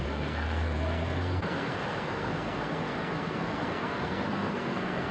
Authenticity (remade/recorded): remade